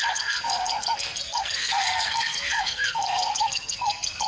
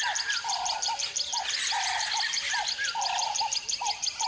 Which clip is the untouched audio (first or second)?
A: second